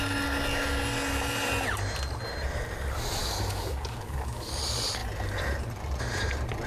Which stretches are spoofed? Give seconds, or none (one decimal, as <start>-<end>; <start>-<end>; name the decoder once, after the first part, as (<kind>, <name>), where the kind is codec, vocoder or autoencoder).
3.2-4.6 (codec, DAC)

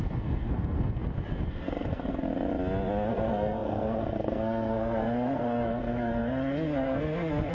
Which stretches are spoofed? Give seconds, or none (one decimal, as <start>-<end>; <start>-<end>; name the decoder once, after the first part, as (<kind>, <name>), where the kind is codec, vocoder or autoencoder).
0.0-1.0 (codec, SNAC); 1.5-2.3; 3.1-7.5

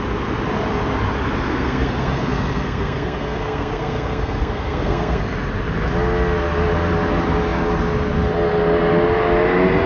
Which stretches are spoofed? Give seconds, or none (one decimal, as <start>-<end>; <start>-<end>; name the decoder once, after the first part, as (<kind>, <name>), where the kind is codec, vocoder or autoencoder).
1.5-5.2 (codec, SNAC)

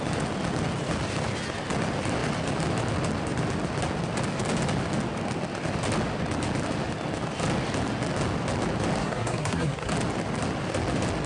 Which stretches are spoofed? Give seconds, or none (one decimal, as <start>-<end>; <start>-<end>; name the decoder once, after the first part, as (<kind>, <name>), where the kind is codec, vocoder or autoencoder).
9.0-9.9 (codec, SNAC)

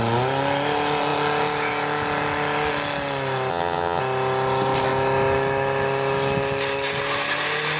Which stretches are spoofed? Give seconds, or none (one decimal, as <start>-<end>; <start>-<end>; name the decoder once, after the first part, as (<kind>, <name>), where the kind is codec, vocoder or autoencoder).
3.5-4.0 (vocoder, HiFi-GAN)

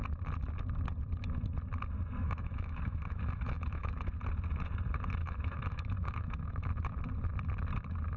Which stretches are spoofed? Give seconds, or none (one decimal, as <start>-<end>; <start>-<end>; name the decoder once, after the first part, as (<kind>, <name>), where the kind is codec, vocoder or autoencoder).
2.2-4.1 (autoencoder, DAC-VAE); 5.2-6.7